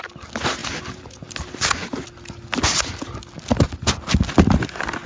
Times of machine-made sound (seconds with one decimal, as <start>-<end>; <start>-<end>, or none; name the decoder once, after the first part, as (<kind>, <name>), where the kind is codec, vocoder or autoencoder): none